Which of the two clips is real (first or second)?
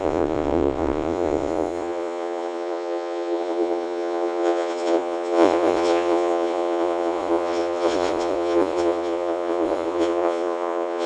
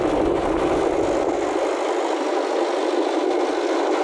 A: second